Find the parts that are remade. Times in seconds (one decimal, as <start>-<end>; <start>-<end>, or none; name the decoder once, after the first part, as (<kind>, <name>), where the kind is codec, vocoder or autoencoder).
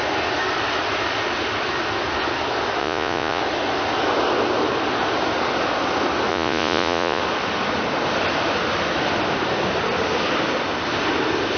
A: 2.8-3.4 (vocoder, Vocos); 6.3-7.2